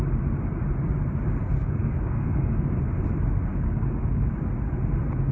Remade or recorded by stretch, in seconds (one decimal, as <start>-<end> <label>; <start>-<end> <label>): 0.0-1.6 recorded; 1.6-2.7 remade; 2.7-3.5 recorded; 3.5-4.3 remade; 4.3-5.3 recorded